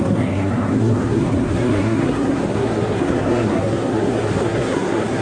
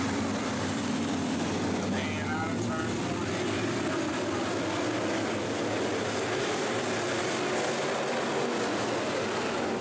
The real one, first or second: second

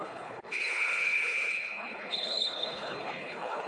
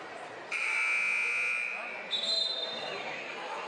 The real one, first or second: second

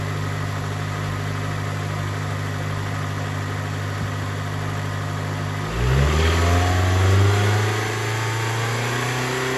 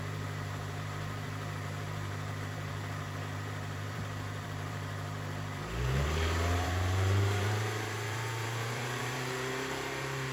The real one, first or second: first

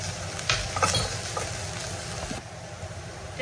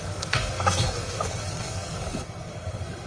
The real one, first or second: first